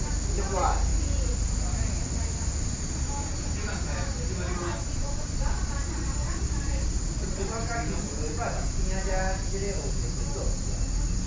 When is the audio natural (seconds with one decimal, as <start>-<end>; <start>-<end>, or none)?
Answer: 0.0-7.8; 10.0-11.3